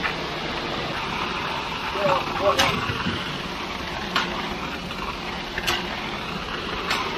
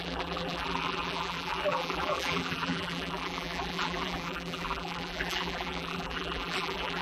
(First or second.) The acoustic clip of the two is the first